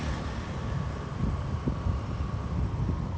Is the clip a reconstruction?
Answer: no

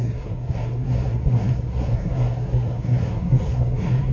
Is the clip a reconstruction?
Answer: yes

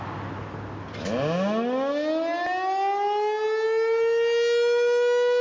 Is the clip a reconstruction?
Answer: no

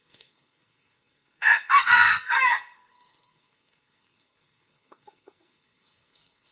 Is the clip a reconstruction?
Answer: yes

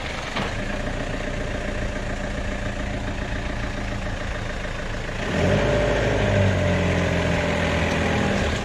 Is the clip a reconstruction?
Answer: no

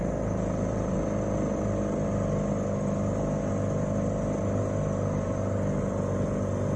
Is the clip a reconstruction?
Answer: no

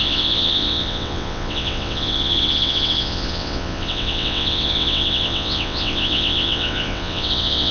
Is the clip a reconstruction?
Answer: yes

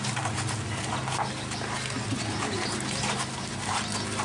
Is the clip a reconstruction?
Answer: no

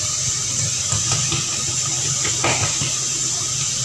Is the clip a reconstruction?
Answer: no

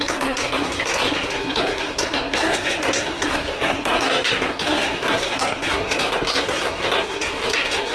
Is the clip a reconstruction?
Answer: yes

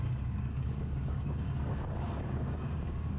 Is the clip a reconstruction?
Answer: yes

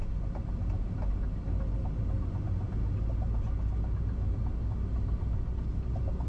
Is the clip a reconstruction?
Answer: no